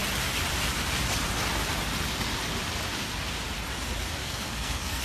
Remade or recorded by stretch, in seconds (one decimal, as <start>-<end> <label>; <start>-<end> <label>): 0.0-4.2 recorded; 4.2-5.0 remade